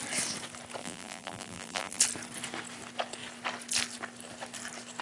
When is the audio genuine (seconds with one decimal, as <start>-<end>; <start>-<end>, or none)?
0.0-0.8; 2.0-5.0